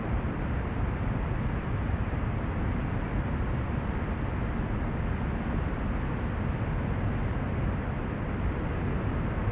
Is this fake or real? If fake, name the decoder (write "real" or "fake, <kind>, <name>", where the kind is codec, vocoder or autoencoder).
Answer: real